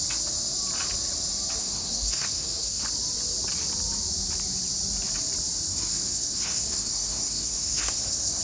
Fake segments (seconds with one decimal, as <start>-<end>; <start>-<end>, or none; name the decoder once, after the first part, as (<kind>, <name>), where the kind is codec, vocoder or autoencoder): 1.6-2.8 (codec, SNAC); 5.7-8.4

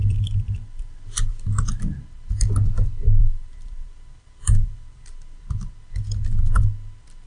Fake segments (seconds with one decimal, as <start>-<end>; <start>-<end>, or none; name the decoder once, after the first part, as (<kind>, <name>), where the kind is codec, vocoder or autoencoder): 0.0-1.8 (vocoder, BigVGAN v2); 3.2-5.7

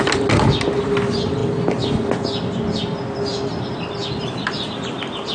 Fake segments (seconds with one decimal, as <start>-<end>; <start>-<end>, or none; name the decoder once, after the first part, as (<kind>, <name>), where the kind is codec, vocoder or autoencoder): none

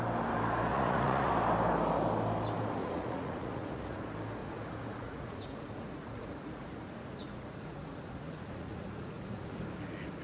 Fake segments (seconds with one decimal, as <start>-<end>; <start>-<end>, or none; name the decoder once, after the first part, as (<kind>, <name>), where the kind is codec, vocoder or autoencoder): 0.7-1.3 (vocoder, Vocos); 2.8-4.0; 4.4-9.6

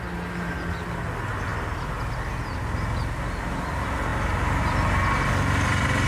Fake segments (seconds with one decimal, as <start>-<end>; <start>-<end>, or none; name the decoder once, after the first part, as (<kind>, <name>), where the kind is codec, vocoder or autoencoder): none

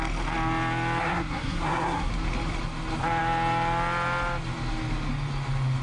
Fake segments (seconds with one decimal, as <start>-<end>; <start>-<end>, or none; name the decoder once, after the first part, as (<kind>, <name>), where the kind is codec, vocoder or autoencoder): 1.0-2.1 (codec, SNAC)

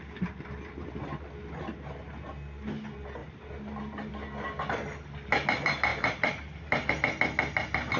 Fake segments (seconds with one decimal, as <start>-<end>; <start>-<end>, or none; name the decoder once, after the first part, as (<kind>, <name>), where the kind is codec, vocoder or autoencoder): 3.2-4.1 (vocoder, BigVGAN v2); 5.9-6.9

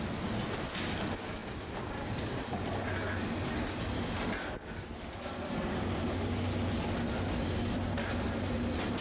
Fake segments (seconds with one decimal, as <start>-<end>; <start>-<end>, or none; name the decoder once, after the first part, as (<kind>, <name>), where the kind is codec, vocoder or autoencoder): none